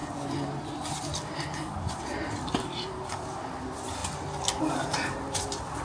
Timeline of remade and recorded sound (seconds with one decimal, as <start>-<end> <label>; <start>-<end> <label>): 0.0-4.0 remade; 4.0-4.6 recorded; 4.6-5.8 remade

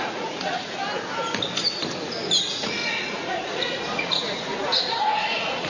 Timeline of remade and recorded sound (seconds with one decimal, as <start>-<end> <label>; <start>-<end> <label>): 0.0-0.8 remade; 0.8-2.4 recorded; 2.4-5.7 remade

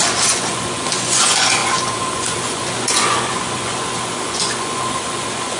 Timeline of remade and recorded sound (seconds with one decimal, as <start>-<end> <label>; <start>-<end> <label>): 0.0-5.6 remade

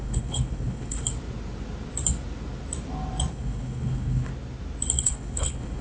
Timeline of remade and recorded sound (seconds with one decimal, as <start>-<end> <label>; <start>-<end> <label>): 0.0-1.0 remade; 1.0-3.3 recorded; 3.3-4.3 remade; 4.3-5.0 recorded; 5.0-5.8 remade